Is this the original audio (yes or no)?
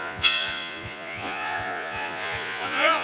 no